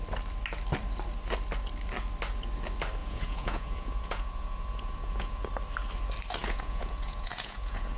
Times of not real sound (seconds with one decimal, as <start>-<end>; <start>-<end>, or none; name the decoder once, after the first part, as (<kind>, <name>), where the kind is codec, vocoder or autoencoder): 3.0-5.5 (vocoder, Vocos); 6.4-8.0